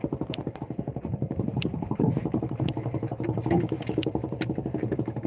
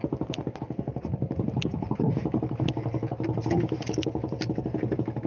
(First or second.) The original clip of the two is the second